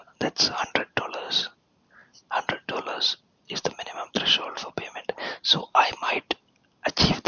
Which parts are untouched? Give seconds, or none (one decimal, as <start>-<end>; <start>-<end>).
0.0-2.0; 6.1-7.3